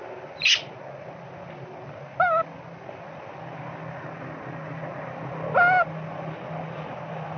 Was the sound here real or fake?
real